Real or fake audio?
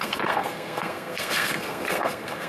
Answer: fake